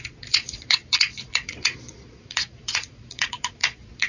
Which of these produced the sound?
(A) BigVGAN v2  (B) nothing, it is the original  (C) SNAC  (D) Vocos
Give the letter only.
D